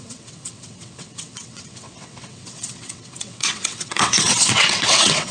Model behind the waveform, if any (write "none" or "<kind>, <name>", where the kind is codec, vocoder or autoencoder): vocoder, WaveNeXt